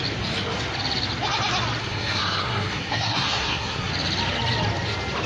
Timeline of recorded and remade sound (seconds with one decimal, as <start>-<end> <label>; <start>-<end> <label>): 0.0-1.8 recorded; 1.8-3.9 remade; 3.9-5.3 recorded

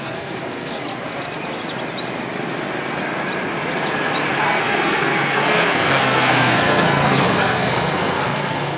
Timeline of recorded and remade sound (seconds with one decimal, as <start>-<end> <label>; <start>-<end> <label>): 0.0-0.8 remade; 0.8-4.5 recorded; 4.5-8.8 remade

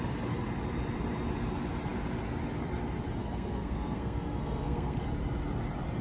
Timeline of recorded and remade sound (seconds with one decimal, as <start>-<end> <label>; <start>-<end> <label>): 0.0-3.2 recorded; 3.2-5.0 remade; 5.0-6.0 recorded

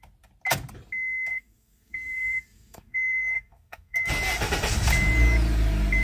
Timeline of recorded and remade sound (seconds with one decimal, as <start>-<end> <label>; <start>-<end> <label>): 0.0-1.3 recorded; 1.3-4.1 remade; 4.1-6.0 recorded